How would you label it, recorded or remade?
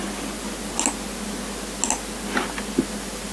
recorded